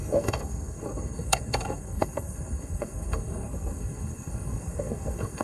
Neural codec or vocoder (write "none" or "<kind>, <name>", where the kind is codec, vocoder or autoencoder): codec, SNAC